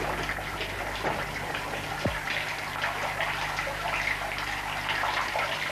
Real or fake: real